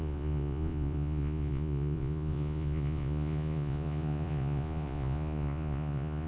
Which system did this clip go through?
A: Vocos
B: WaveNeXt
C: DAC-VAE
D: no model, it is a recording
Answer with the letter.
A